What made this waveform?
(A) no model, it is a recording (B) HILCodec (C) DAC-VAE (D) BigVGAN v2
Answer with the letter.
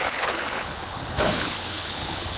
B